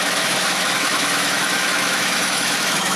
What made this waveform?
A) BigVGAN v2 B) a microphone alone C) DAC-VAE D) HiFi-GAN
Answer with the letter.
C